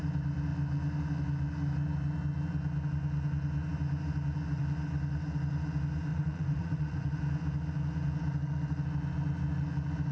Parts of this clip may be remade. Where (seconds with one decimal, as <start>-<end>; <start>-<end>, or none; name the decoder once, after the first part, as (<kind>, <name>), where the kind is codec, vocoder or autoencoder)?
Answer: 6.1-7.2 (vocoder, Vocos)